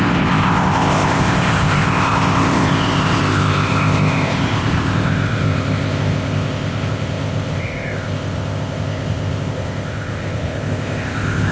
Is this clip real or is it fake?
fake